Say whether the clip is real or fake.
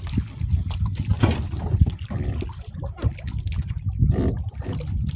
fake